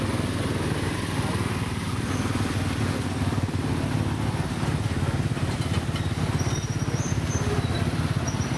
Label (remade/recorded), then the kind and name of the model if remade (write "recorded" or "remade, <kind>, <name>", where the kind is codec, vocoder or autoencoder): recorded